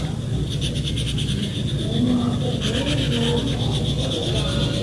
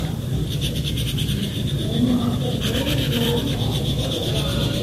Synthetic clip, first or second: second